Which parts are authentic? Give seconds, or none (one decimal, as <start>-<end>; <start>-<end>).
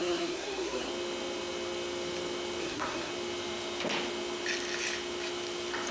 0.9-2.6; 3.1-5.9